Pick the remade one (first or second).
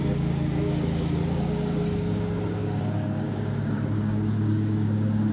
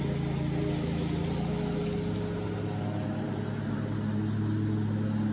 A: first